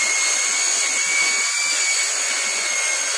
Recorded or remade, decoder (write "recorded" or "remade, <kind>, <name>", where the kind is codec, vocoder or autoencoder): remade, vocoder, Vocos